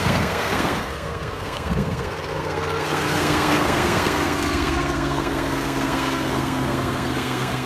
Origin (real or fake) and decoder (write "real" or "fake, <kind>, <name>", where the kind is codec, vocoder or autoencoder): fake, codec, SNAC